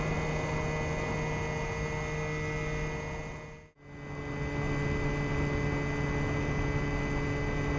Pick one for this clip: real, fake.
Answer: real